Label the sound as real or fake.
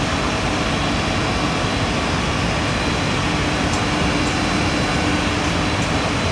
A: real